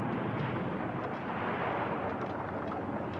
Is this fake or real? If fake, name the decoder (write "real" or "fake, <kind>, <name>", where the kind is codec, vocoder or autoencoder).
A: real